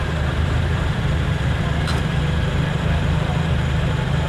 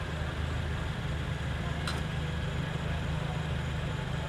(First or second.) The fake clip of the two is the first